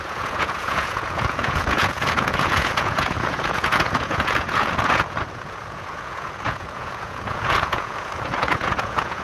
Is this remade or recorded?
remade